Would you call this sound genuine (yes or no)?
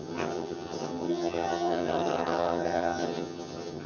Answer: no